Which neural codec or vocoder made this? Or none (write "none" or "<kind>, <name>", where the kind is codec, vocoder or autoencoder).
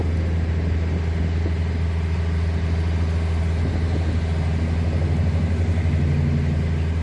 none